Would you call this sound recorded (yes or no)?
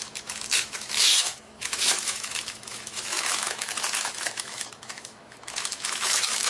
no